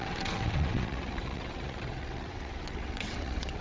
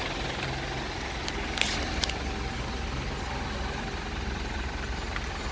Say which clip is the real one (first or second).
second